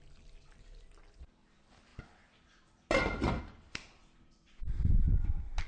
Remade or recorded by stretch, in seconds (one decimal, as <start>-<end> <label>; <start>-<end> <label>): 0.0-5.7 recorded